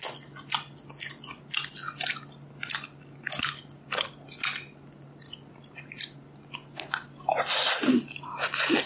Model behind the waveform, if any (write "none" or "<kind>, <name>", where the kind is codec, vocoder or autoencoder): none